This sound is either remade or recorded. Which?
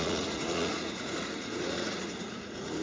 remade